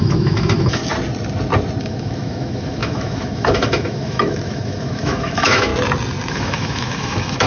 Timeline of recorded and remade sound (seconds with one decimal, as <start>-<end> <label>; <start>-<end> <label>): 0.0-0.8 remade; 0.8-1.8 recorded; 1.8-5.7 remade; 5.7-6.3 recorded; 6.3-7.5 remade